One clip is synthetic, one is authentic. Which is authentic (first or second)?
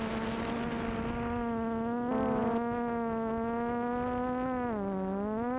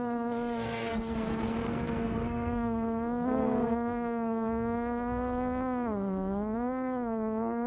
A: first